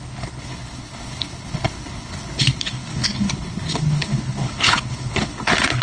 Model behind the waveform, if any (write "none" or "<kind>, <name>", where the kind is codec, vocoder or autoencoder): codec, HILCodec